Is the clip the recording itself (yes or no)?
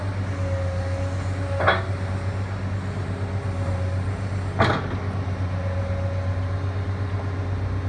yes